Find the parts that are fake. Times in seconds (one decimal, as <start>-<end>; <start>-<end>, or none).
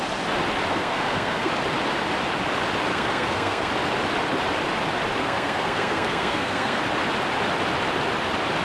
0.7-1.5; 2.9-3.7; 5.2-6.8